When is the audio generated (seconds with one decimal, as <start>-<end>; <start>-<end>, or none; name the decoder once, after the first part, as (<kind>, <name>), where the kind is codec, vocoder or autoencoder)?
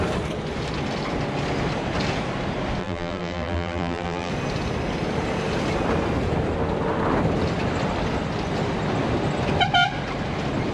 2.8-4.3 (vocoder, BigVGAN v2)